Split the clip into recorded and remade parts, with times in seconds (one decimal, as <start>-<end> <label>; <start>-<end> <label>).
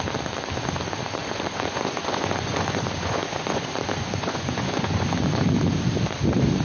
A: 0.0-1.2 recorded; 1.2-5.2 remade; 5.2-6.6 recorded